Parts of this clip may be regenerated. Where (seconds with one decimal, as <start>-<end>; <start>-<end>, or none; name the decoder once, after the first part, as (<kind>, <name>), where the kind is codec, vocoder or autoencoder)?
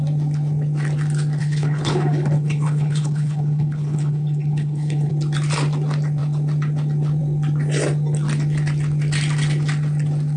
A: 1.4-5.1 (codec, HILCodec)